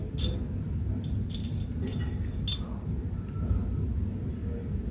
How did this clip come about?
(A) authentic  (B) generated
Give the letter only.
A